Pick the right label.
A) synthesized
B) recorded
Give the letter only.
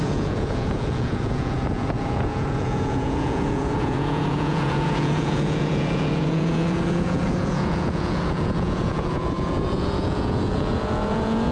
A